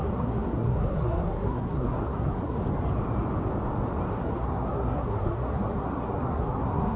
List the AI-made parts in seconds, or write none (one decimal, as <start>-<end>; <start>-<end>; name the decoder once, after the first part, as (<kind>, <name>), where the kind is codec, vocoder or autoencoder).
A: 0.0-2.6 (codec, SNAC); 4.1-7.0